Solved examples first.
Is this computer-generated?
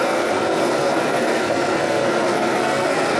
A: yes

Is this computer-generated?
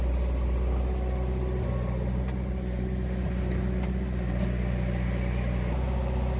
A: no